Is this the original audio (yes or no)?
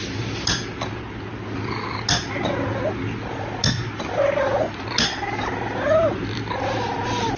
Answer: yes